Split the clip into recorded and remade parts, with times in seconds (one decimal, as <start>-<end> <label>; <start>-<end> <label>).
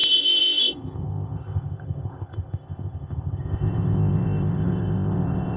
0.0-5.6 remade